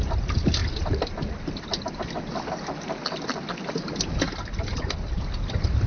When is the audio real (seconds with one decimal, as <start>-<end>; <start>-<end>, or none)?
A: 0.0-5.9